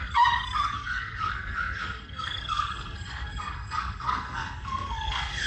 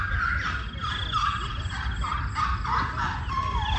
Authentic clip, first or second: second